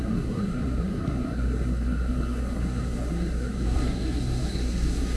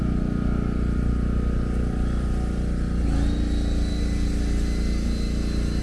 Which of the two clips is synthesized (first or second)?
first